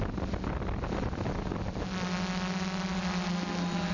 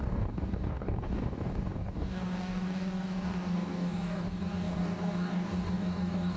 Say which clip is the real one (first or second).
first